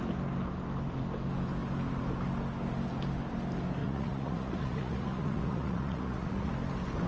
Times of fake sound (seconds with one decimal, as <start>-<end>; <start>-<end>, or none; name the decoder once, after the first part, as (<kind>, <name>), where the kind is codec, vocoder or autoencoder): 3.8-6.5 (vocoder, Vocos)